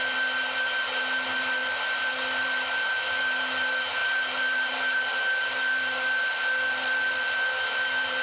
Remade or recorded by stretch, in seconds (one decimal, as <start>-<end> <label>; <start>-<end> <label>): 0.0-4.0 recorded; 4.0-5.0 remade; 5.0-8.2 recorded